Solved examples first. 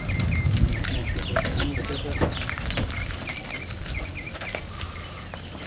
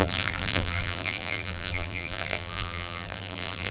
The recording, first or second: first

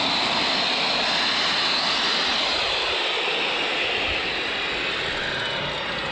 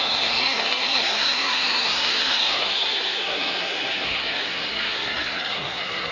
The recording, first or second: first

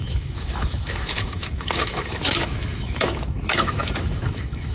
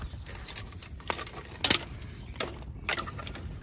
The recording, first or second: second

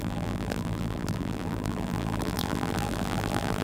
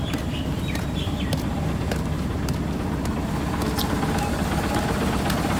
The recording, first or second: second